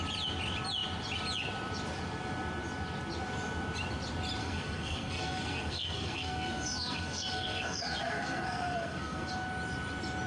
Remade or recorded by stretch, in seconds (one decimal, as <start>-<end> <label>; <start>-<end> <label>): 0.0-4.4 recorded; 4.4-9.3 remade; 9.3-10.3 recorded